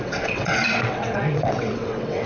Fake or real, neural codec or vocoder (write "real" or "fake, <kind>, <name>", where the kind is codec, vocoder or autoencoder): fake, vocoder, WaveNeXt